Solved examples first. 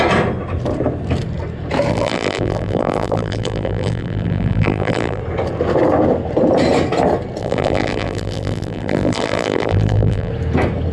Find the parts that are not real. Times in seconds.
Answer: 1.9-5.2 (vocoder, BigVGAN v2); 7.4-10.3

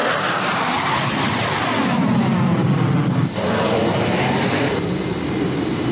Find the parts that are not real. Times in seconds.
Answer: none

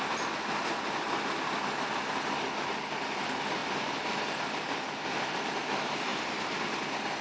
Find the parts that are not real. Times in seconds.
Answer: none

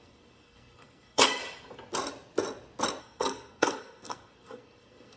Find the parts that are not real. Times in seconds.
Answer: 0.0-1.4 (codec, SNAC); 3.0-5.2

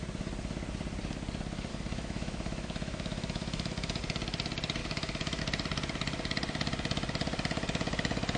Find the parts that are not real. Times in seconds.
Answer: 1.7-4.0 (autoencoder, DAC-VAE); 4.8-5.4

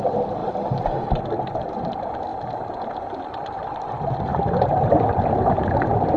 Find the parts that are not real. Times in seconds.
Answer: 0.0-0.4 (vocoder, BigVGAN v2); 1.0-2.3; 3.3-6.2